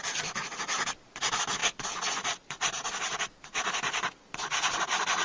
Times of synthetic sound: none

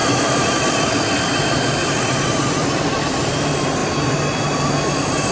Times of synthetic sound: 0.0-3.2 (vocoder, BigVGAN v2)